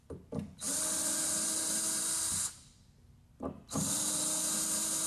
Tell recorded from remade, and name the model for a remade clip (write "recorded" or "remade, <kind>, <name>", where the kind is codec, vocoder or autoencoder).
remade, vocoder, BigVGAN v2